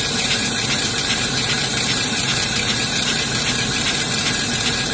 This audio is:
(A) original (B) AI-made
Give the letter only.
B